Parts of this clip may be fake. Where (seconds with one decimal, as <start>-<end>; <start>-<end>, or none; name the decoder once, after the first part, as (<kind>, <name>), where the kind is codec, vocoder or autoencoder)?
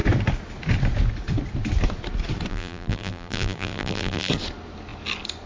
2.5-4.3 (vocoder, BigVGAN v2)